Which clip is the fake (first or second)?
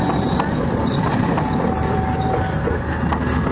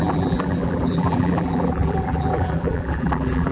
second